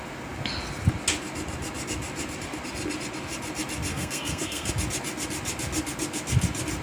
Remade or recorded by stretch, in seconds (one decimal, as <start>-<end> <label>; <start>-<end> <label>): 0.0-3.9 recorded; 3.9-4.7 remade; 4.7-6.8 recorded